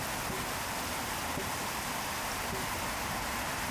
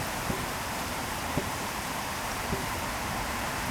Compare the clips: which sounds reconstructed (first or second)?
second